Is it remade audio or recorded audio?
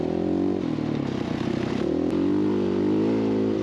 recorded